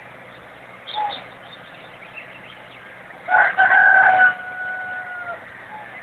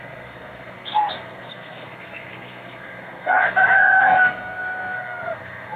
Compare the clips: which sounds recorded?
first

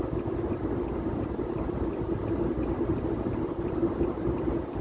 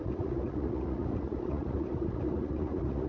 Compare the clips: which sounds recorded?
first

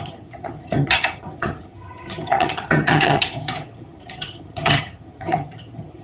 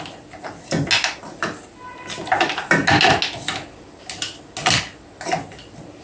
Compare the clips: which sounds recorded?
second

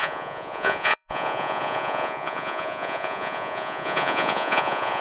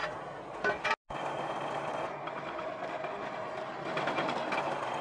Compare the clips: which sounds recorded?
second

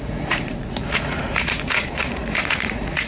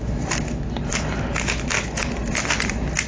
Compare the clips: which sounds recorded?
second